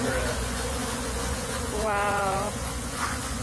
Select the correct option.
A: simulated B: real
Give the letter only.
A